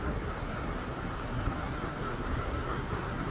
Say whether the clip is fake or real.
fake